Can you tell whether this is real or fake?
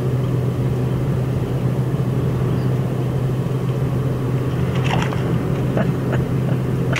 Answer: real